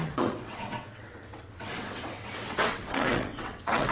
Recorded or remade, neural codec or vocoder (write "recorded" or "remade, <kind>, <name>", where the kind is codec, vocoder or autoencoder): remade, vocoder, WaveNeXt